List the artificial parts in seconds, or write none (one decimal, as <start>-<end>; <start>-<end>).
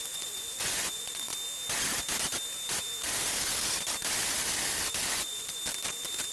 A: 0.0-1.3; 5.1-5.6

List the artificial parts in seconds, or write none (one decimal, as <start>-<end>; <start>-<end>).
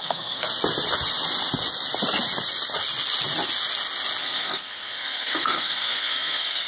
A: 0.0-0.4; 4.2-6.7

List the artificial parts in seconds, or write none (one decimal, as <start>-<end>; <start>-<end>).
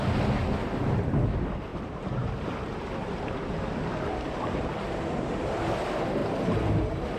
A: 1.7-4.9; 6.2-7.2